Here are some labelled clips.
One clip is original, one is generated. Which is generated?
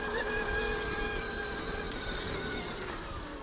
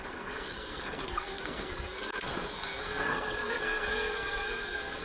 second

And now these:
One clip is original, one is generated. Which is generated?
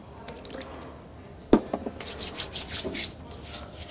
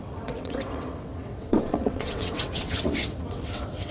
second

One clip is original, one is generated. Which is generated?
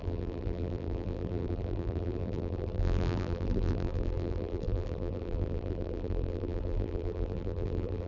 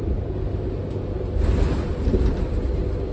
first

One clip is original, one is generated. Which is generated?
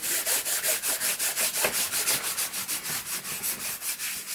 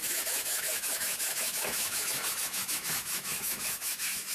second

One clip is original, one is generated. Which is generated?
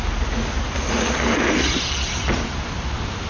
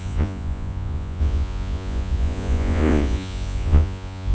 second